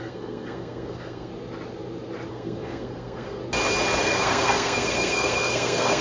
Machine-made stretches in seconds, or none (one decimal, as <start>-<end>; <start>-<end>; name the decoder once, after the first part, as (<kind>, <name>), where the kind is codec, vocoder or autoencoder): 0.0-1.3 (codec, SNAC); 2.3-3.4; 4.0-6.0